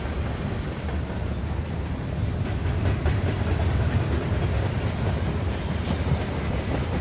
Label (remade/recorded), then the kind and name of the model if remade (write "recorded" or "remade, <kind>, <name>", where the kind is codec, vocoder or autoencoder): recorded